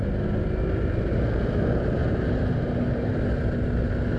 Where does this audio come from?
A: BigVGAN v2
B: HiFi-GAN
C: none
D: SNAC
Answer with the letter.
C